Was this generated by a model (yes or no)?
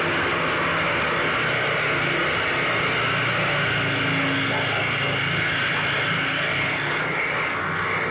no